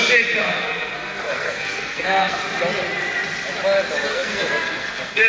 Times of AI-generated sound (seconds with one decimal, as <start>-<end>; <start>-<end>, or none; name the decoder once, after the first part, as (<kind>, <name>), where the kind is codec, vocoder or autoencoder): 0.4-2.4 (codec, SNAC); 4.1-5.3